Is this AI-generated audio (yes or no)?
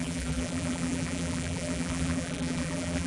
yes